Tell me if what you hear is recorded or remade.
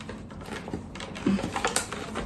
recorded